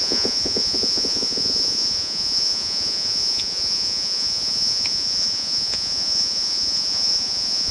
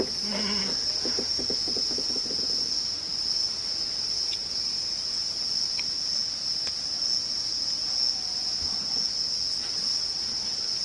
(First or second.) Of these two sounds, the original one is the second